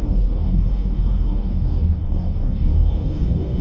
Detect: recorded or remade remade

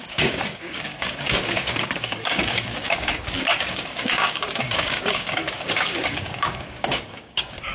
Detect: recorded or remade remade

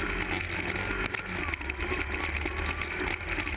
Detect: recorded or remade recorded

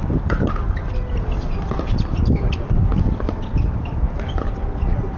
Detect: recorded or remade recorded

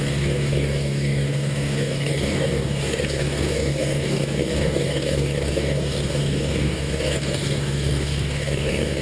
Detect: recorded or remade remade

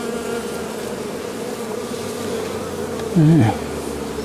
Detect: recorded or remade recorded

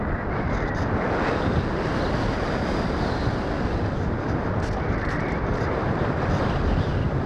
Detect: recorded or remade recorded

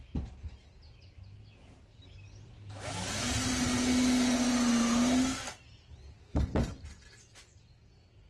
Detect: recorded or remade recorded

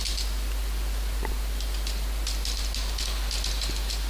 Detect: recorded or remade recorded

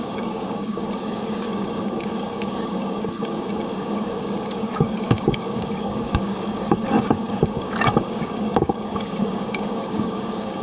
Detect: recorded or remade remade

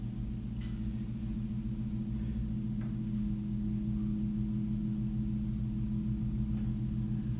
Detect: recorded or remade recorded